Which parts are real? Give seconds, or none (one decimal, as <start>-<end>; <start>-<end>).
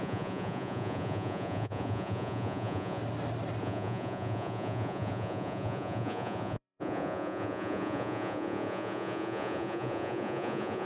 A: 3.0-3.6